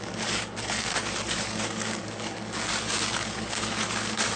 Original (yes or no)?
no